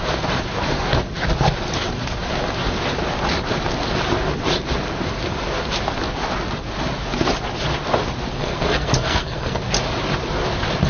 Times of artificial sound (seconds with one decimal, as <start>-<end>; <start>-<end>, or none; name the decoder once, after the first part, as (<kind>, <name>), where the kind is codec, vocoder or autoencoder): 8.3-9.6 (codec, SNAC)